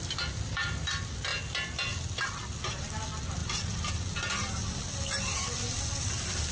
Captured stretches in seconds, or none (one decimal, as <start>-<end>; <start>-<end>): 0.0-6.5